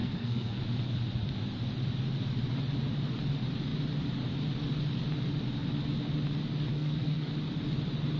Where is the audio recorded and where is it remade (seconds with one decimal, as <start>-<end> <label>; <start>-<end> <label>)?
0.0-0.6 remade; 0.6-6.7 recorded; 6.7-7.3 remade; 7.3-8.2 recorded